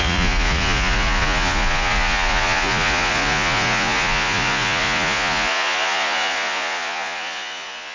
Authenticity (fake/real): fake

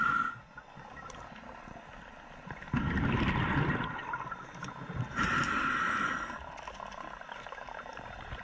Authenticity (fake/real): real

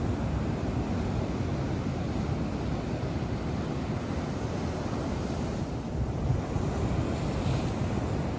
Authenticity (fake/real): real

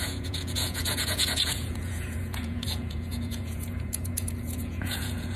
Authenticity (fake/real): fake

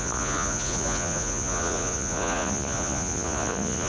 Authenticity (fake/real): fake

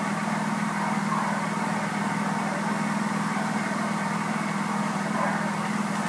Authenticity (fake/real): real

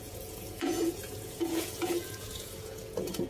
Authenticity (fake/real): fake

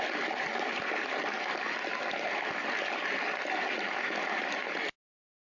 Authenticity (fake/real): real